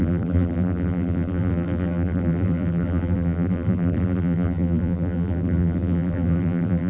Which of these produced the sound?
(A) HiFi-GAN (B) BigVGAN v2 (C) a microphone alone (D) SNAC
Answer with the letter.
B